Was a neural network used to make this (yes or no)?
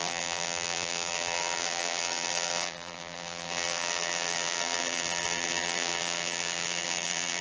yes